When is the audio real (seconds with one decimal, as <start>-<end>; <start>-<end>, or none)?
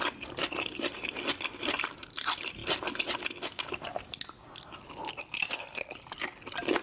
2.6-6.8